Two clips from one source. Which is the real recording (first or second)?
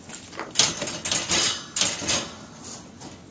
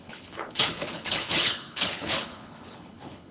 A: first